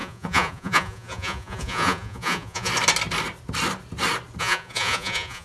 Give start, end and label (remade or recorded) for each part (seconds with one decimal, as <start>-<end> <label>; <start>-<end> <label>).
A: 0.0-2.7 remade; 2.7-4.4 recorded; 4.4-5.4 remade